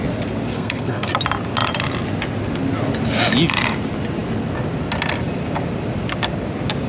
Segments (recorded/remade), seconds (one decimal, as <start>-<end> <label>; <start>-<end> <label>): 0.0-0.5 recorded; 0.5-1.1 remade; 1.1-6.9 recorded